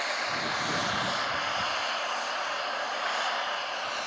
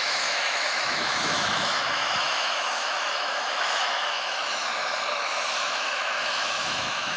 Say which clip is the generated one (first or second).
second